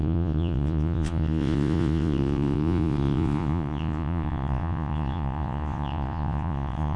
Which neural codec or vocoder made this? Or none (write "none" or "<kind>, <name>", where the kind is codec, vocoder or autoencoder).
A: vocoder, Vocos